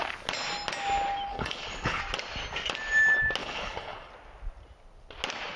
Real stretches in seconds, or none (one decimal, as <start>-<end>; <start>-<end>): 0.0-1.3; 2.0-3.4; 4.1-5.6